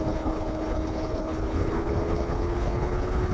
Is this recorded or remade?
remade